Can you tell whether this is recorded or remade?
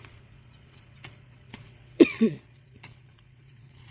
remade